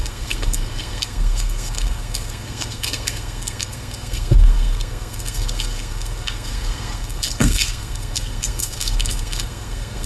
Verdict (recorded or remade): remade